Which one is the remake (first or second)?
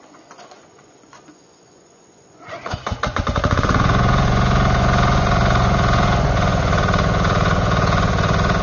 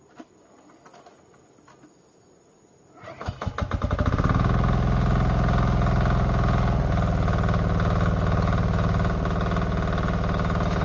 first